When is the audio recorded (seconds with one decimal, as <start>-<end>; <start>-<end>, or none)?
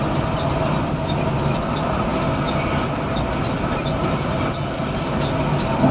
0.0-5.9